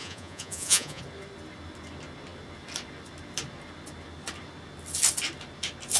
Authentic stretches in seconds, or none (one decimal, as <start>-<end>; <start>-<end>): 1.0-6.0